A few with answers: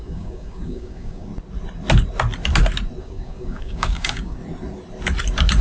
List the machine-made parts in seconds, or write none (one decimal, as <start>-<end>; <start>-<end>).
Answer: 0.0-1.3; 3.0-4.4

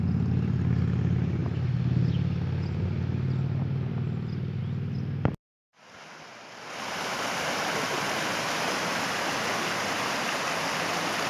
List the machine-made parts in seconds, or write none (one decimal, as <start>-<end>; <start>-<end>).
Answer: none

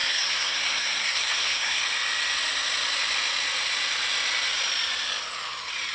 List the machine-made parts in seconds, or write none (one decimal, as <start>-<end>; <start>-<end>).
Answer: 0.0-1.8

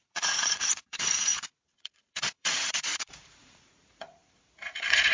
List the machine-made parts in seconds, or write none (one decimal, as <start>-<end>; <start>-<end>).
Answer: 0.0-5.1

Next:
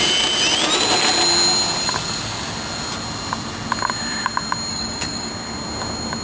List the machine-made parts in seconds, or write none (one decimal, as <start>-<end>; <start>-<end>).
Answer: 4.7-5.3

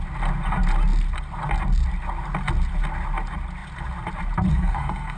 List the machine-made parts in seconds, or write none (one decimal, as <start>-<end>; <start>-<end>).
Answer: 4.5-5.2